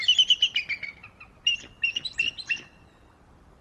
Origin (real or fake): real